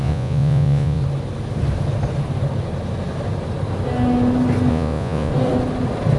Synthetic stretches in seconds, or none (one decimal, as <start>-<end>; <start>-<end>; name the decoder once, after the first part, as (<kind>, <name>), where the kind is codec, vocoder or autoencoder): 0.0-1.0 (vocoder, Vocos); 4.7-5.3